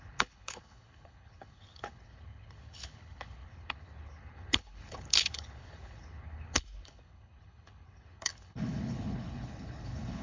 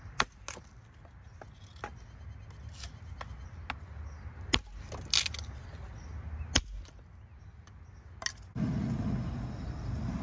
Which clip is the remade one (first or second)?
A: first